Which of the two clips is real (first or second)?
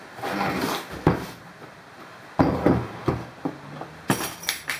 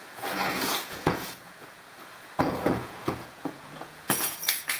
first